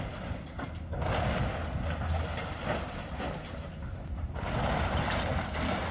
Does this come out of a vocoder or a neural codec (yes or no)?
no